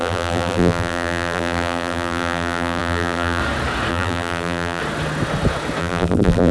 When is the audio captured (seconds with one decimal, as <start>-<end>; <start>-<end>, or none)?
3.4-3.9; 4.8-5.8